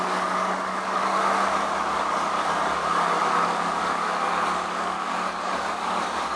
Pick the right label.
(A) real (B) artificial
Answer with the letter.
B